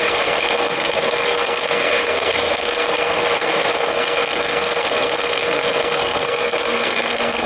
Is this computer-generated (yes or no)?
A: yes